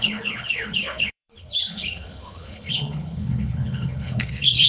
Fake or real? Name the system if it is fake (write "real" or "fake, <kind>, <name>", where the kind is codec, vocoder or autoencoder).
fake, codec, HILCodec